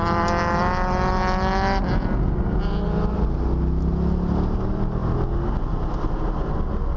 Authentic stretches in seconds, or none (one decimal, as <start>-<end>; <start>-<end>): 0.0-7.0